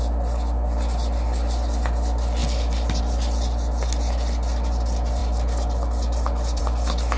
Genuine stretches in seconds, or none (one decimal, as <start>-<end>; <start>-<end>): 0.0-7.2